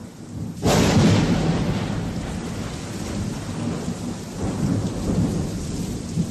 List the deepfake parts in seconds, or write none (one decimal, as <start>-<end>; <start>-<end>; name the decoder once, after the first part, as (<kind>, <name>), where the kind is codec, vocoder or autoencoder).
none